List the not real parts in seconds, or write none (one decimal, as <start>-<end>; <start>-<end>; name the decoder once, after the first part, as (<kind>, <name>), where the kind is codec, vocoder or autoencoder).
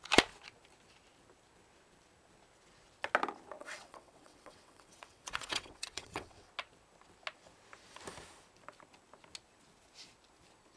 3.6-6.5 (vocoder, WaveNeXt)